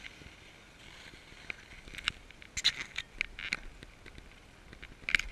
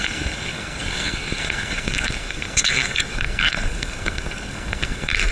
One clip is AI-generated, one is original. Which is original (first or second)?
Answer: first